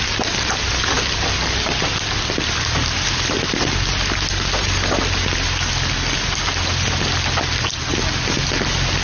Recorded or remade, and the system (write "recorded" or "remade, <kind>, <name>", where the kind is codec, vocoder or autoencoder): recorded